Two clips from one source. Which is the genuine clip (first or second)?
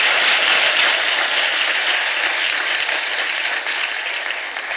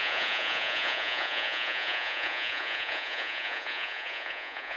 first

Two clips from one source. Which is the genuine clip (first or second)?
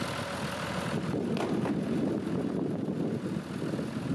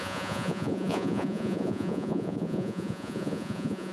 first